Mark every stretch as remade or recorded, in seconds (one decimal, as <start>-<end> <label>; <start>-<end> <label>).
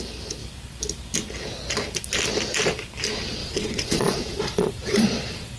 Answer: 0.0-3.4 recorded; 3.4-5.6 remade